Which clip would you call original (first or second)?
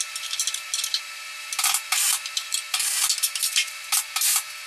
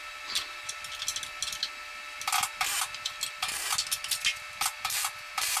second